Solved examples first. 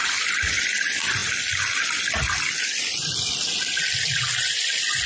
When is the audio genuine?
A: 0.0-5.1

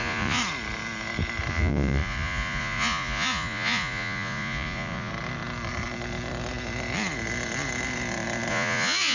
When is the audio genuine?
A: 0.4-1.5; 5.1-8.5

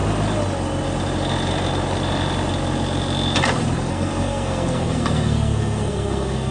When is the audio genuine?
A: 0.0-3.9

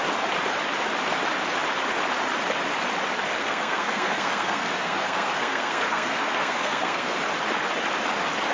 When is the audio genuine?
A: 0.0-3.4; 7.2-8.5

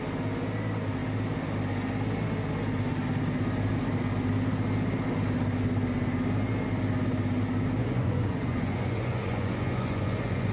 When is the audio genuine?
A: 0.0-7.8

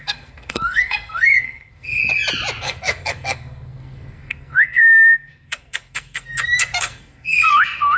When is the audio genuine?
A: 2.0-2.6